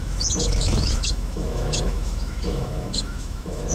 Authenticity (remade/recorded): remade